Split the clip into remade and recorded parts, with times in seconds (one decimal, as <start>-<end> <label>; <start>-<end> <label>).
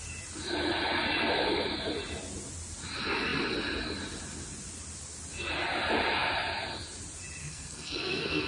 0.0-7.4 recorded; 7.4-8.5 remade